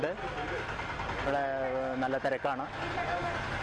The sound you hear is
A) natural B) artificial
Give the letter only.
A